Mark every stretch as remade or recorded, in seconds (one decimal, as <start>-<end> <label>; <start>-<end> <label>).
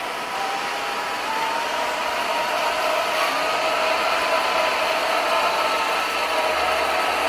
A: 0.0-7.3 recorded